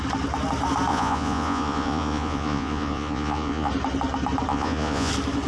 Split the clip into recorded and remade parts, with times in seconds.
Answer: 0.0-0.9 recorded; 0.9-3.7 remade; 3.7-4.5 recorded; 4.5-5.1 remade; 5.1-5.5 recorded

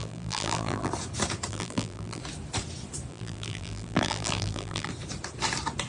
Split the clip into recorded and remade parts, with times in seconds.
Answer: 0.0-0.9 remade; 0.9-1.5 recorded; 1.5-2.2 remade; 2.2-3.1 recorded; 3.1-4.9 remade; 4.9-5.9 recorded

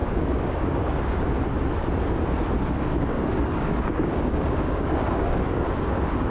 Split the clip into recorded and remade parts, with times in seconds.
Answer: 0.0-1.3 remade; 1.3-2.9 recorded; 2.9-6.3 remade

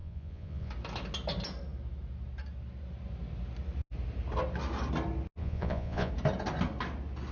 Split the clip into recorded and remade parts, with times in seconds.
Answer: 0.0-0.7 remade; 0.7-5.4 recorded; 5.4-6.1 remade; 6.1-7.3 recorded

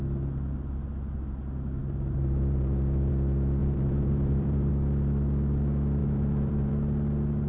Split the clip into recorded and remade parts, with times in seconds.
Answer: 0.0-1.8 recorded; 1.8-3.1 remade; 3.1-3.6 recorded; 3.6-4.7 remade; 4.7-6.0 recorded; 6.0-6.7 remade; 6.7-7.5 recorded

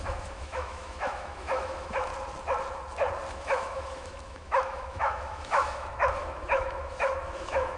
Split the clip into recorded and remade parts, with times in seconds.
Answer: 0.0-2.1 remade; 2.1-3.3 recorded; 3.3-7.8 remade